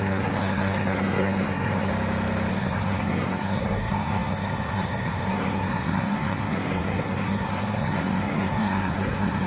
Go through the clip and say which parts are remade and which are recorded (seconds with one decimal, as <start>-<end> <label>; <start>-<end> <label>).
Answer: 0.0-1.9 remade; 1.9-2.5 recorded; 2.5-9.5 remade